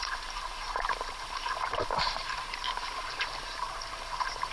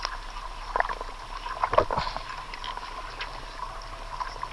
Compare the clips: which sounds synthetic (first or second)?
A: first